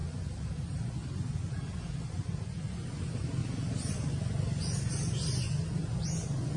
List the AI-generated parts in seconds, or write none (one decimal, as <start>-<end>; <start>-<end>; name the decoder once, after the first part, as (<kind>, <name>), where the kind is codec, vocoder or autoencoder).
0.0-3.4 (vocoder, Vocos); 3.9-6.6